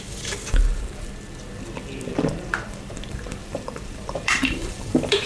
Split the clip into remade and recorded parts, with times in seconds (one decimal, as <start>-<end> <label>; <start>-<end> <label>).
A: 0.0-0.7 recorded; 0.7-1.4 remade; 1.4-2.1 recorded; 2.1-5.3 remade